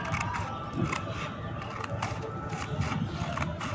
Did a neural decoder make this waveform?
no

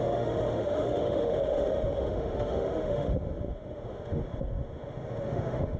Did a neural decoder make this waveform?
yes